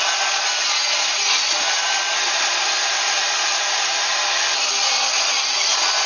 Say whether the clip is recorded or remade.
recorded